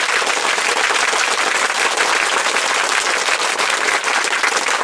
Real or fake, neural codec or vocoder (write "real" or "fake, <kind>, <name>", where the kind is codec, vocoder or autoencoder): real